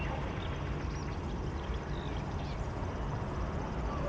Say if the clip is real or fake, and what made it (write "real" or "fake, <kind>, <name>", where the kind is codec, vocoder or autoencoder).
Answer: real